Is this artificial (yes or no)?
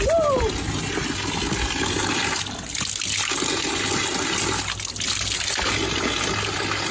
no